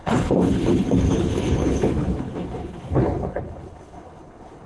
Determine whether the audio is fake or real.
fake